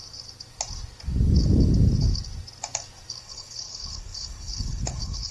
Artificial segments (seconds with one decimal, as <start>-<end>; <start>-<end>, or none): 3.2-5.3